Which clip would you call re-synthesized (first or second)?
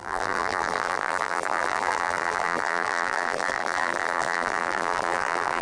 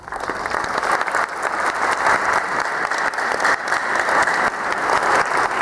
first